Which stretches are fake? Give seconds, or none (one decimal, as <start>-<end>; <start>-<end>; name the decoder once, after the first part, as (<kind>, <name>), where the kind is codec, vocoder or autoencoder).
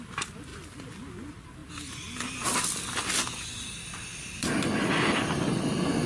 none